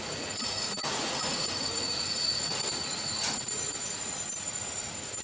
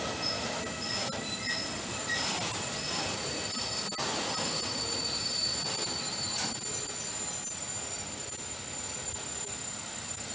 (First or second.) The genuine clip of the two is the second